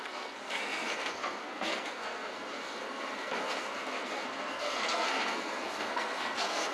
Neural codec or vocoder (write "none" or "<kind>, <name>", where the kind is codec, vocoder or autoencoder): codec, SNAC